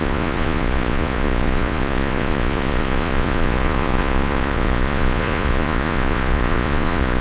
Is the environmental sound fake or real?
fake